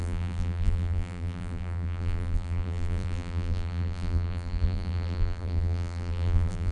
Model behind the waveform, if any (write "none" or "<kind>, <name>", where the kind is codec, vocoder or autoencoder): vocoder, BigVGAN v2